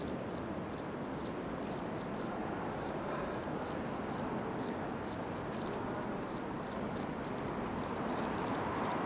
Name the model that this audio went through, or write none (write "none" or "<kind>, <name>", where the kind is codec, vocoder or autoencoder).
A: none